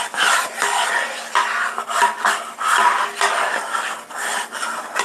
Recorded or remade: recorded